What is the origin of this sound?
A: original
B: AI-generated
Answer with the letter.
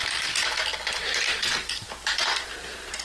A